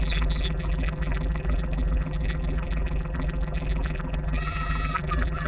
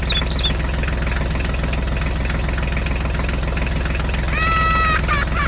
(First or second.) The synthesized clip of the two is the first